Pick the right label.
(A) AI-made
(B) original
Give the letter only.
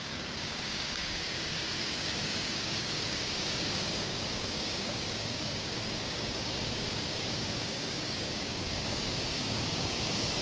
A